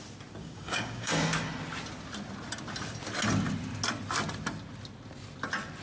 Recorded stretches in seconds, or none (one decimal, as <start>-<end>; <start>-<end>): 0.0-0.4; 1.1-5.8